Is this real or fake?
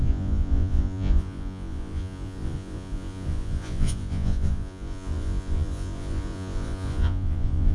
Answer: fake